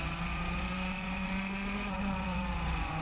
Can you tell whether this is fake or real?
fake